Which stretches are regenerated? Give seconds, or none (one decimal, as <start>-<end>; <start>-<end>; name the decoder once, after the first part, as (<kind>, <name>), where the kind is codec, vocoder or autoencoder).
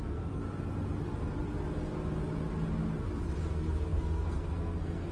0.0-0.4 (codec, SNAC); 3.5-5.1